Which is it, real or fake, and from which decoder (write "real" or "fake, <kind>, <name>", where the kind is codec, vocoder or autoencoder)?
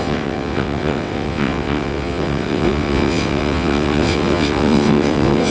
fake, vocoder, WaveNeXt